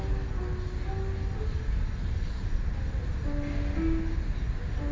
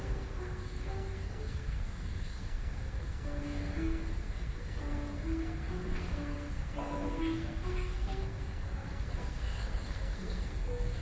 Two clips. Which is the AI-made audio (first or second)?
second